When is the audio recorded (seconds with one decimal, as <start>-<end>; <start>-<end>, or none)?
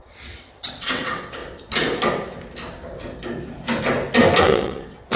1.4-4.4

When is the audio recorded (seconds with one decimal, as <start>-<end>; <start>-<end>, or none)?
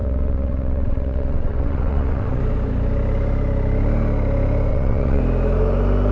2.4-4.7; 5.2-6.1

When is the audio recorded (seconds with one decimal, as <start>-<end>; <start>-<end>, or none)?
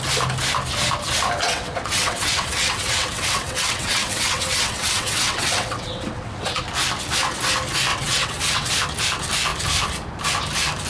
0.0-1.4; 6.6-7.9; 8.7-10.9